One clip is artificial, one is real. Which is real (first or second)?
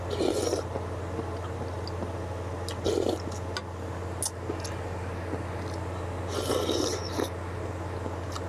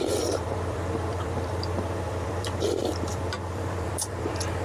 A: first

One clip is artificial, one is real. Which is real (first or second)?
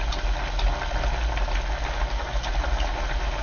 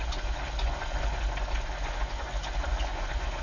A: first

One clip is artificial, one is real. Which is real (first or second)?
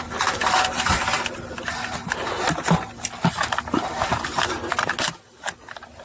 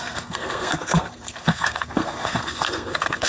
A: first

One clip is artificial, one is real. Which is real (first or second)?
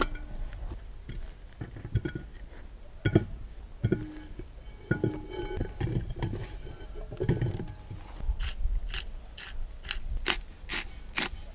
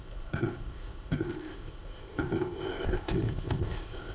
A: first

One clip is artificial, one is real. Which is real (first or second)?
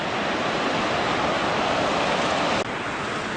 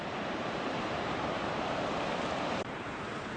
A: first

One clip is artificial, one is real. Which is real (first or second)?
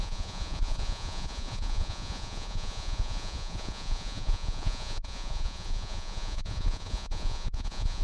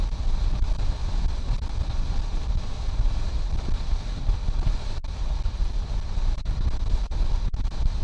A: second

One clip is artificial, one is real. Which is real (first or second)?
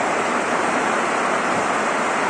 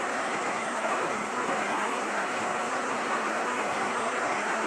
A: first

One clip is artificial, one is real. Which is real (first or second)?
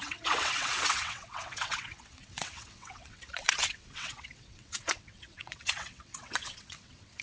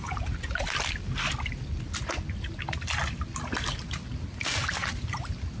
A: second